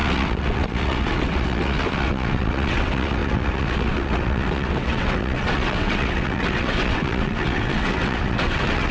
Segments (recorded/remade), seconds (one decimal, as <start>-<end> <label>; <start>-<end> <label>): 0.0-8.9 remade